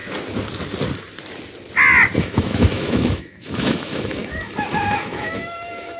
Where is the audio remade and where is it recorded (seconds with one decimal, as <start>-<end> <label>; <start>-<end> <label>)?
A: 0.0-2.2 recorded; 2.2-6.0 remade

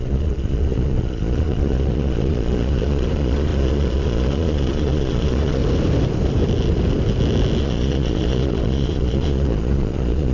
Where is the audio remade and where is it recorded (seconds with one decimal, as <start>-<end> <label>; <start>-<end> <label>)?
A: 0.0-5.6 remade; 5.6-7.6 recorded; 7.6-10.3 remade

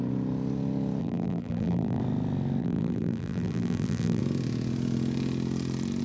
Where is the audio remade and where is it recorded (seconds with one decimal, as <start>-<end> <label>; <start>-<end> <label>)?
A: 0.0-1.0 recorded; 1.0-2.0 remade; 2.0-2.6 recorded; 2.6-4.2 remade; 4.2-6.0 recorded

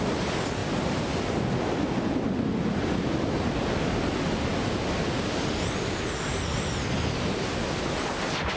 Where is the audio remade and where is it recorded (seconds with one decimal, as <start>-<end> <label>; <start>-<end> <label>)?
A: 0.0-8.6 recorded

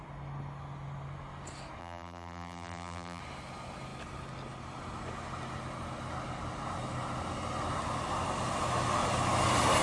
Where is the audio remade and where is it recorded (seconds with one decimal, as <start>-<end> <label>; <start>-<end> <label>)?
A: 0.0-1.8 recorded; 1.8-3.2 remade; 3.2-9.8 recorded

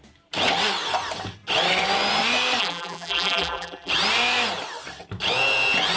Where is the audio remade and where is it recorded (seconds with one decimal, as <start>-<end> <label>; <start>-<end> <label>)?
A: 0.0-2.6 recorded; 2.6-3.9 remade; 3.9-6.0 recorded